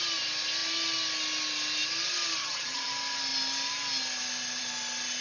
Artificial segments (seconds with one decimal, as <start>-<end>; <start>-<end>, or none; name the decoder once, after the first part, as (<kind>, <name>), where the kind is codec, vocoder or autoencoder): 2.4-2.9 (vocoder, HiFi-GAN)